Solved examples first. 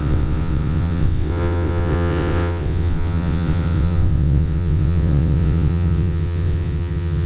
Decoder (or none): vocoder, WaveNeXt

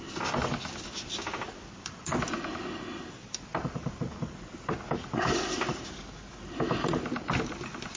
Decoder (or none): none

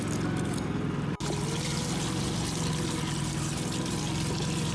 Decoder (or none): none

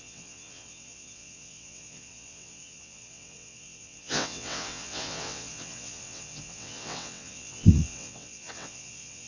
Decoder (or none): vocoder, WaveNeXt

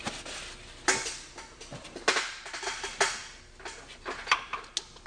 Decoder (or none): none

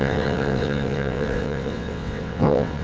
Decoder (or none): vocoder, WaveNeXt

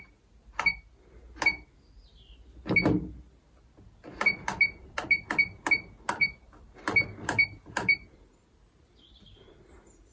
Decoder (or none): none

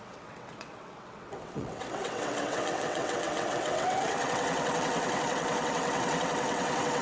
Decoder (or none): vocoder, WaveNeXt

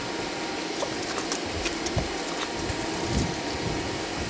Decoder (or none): none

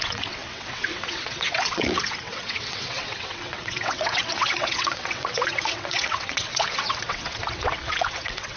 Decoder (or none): vocoder, WaveNeXt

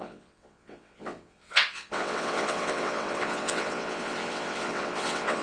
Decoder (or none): vocoder, WaveNeXt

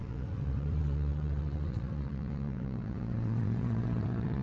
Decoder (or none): vocoder, WaveNeXt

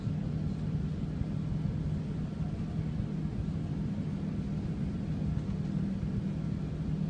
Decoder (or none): none